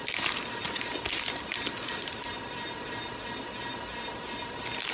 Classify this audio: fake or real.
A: real